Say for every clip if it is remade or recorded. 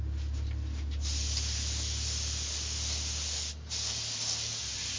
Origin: recorded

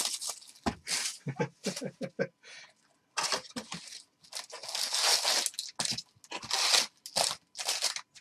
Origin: recorded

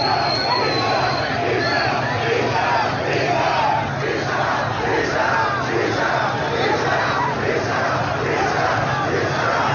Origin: recorded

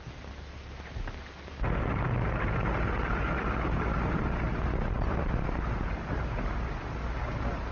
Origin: recorded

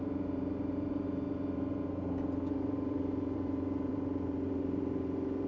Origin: remade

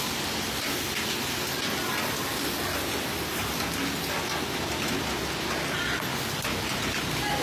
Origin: recorded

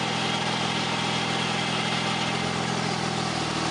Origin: recorded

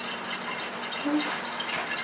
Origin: recorded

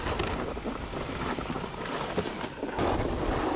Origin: recorded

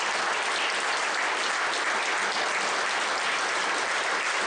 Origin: recorded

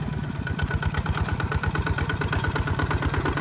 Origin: remade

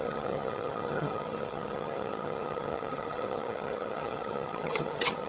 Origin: remade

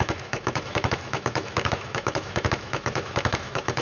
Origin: remade